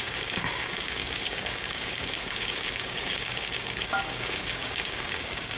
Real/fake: fake